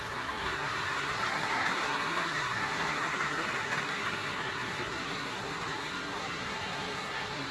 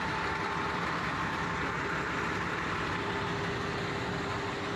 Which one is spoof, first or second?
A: first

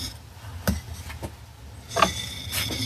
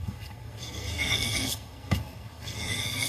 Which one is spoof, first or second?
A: second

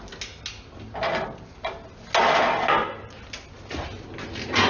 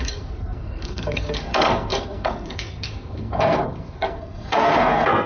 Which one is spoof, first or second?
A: second